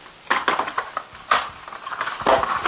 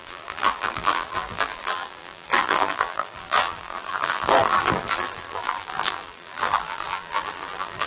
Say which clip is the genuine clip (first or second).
first